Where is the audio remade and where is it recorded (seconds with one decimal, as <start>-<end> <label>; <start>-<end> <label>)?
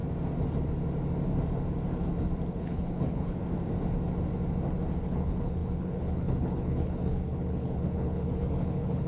0.0-2.5 recorded; 2.5-3.4 remade; 3.4-5.0 recorded; 5.0-9.1 remade